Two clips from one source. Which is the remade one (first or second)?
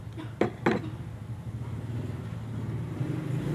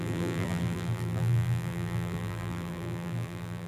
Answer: second